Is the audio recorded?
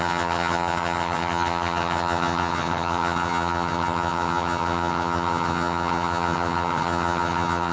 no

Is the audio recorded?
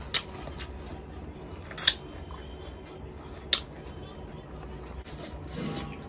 yes